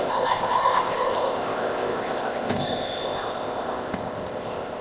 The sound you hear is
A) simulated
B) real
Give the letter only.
A